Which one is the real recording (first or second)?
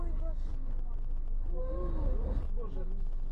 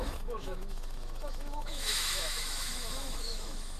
first